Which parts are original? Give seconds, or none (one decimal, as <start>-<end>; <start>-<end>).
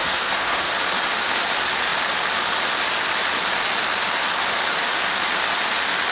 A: 0.7-6.1